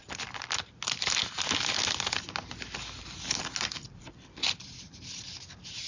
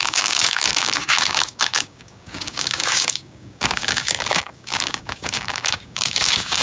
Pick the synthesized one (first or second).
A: second